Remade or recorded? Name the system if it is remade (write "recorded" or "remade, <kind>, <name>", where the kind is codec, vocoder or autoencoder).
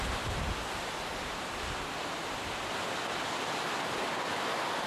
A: recorded